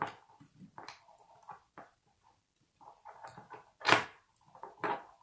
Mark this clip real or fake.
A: real